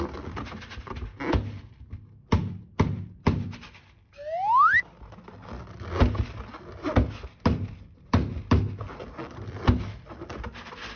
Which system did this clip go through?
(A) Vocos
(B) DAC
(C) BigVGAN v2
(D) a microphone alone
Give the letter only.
D